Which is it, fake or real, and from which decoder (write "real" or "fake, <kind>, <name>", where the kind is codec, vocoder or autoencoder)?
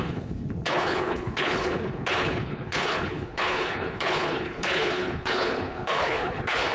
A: fake, codec, HILCodec